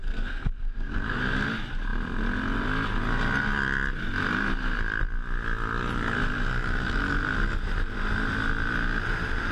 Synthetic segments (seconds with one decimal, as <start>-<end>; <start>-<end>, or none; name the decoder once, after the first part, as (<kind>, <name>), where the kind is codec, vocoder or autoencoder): 0.0-1.2 (codec, SNAC)